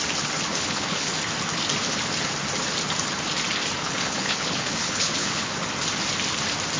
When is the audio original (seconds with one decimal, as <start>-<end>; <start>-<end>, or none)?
0.0-0.5; 1.1-3.8; 5.5-6.8